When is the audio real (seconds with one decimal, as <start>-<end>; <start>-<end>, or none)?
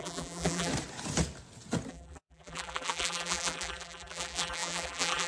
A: 0.7-1.9